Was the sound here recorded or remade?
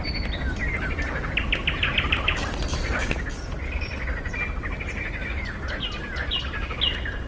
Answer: recorded